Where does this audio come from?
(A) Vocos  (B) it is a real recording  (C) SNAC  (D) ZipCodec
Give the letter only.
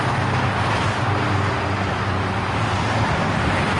B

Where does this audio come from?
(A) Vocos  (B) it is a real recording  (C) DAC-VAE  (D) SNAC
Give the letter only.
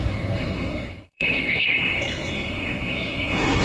D